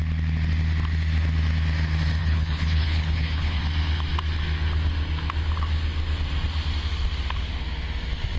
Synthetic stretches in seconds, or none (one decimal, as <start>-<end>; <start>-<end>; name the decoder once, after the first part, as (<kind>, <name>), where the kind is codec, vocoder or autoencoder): 2.2-3.6 (codec, HILCodec)